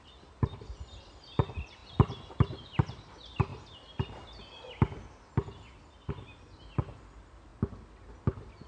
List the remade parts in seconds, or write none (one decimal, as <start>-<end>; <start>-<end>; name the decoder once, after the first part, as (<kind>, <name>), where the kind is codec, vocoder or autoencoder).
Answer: 0.0-3.5 (vocoder, BigVGAN v2); 6.1-7.5